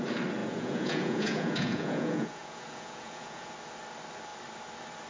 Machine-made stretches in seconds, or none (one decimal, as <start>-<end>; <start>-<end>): 0.4-3.5